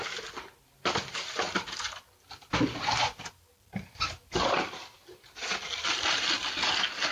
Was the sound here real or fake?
real